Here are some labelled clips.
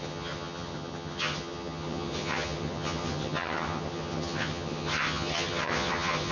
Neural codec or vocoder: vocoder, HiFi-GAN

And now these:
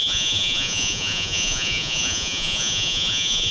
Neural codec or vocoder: vocoder, Vocos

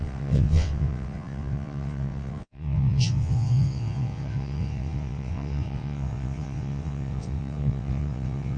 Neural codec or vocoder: vocoder, WaveNeXt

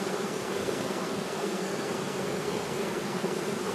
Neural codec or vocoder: codec, SNAC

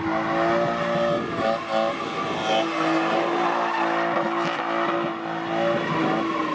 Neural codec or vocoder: none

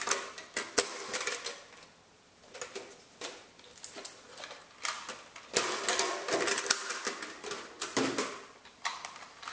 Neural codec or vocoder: none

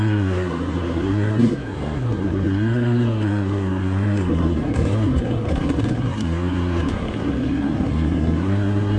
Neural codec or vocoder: codec, SNAC